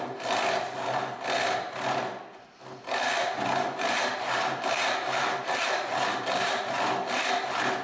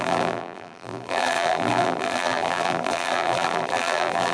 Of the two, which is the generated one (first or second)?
second